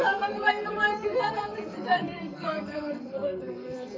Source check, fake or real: fake